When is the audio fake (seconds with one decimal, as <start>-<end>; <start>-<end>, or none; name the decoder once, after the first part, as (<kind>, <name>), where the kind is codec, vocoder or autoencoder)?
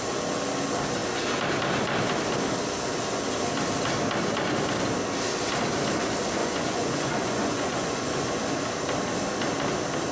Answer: 6.4-8.4 (vocoder, Vocos)